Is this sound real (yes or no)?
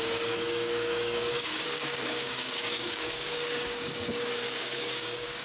no